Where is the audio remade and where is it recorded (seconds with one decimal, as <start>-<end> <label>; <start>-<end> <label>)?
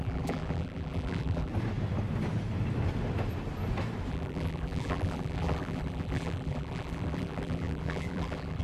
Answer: 0.0-1.5 remade; 1.5-4.1 recorded; 4.1-8.6 remade